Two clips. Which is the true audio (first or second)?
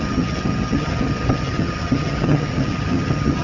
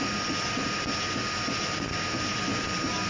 second